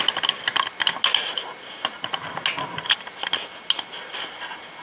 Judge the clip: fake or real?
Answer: real